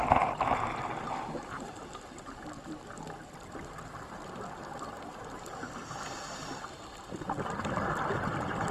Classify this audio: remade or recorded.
recorded